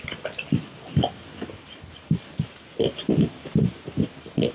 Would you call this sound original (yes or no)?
yes